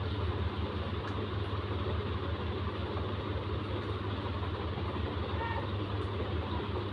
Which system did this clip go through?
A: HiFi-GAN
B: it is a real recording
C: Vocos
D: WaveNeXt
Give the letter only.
B